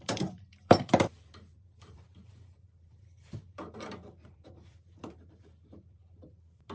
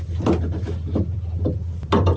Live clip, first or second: second